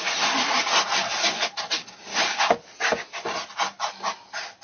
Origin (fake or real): real